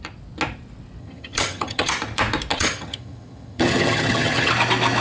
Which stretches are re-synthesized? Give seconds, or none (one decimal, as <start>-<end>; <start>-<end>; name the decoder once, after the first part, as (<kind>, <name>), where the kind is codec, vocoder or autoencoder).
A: 1.0-1.9 (vocoder, HiFi-GAN); 2.5-4.5